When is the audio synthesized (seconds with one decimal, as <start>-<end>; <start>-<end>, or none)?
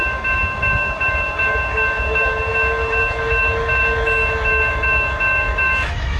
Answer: 0.0-6.2